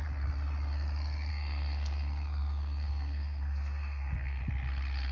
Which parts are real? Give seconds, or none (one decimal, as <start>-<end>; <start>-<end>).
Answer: 0.0-1.3; 4.4-5.1